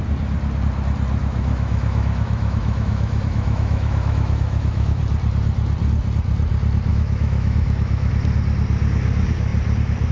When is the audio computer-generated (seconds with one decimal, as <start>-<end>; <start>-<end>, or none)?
1.2-5.0; 6.9-8.1